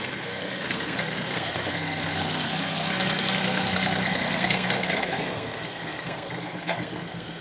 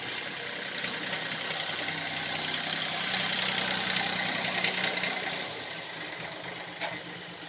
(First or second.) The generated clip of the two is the first